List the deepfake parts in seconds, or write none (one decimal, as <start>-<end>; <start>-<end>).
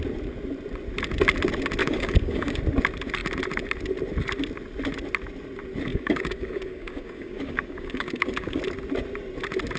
1.8-2.6; 5.9-8.6